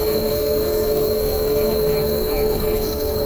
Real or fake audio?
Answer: fake